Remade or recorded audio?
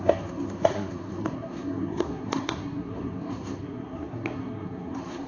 remade